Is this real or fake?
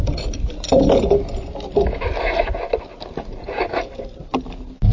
real